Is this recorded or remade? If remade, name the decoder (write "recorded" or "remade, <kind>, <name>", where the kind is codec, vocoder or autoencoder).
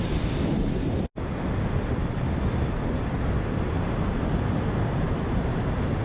recorded